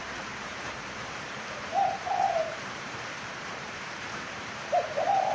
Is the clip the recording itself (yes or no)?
no